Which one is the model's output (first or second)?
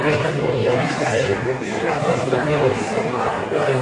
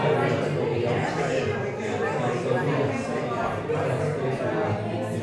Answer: first